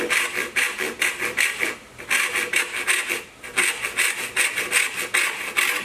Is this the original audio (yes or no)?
yes